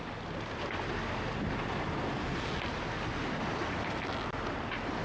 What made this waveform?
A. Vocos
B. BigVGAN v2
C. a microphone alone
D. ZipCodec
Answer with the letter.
C